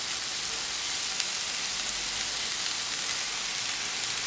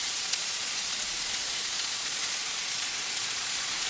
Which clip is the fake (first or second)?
second